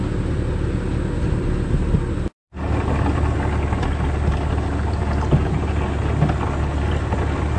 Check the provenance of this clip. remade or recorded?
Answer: recorded